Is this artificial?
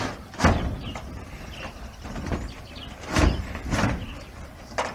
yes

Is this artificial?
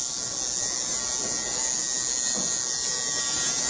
no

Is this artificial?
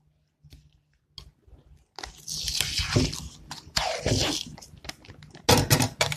no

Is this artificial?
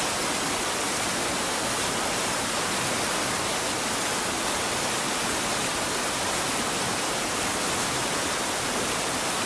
no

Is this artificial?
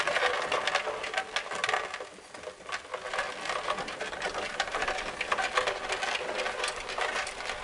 no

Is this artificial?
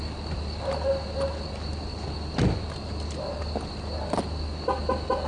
no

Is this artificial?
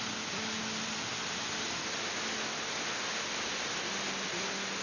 no